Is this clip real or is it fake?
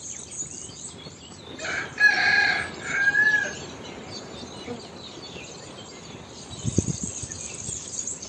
real